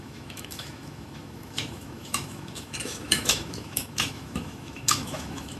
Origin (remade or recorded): remade